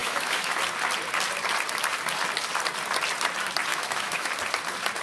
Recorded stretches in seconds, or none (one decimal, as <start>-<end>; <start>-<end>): 0.6-3.7; 4.3-5.0